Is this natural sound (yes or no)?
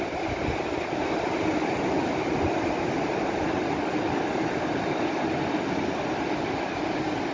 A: yes